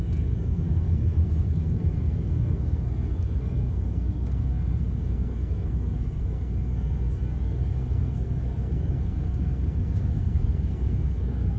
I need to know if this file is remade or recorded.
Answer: remade